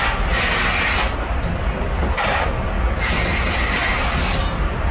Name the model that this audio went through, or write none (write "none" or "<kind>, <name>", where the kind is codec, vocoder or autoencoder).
none